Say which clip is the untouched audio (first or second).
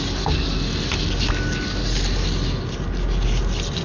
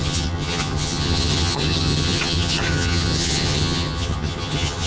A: first